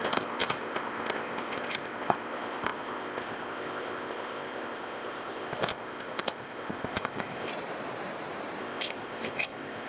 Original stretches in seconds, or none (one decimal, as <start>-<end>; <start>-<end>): 7.5-8.6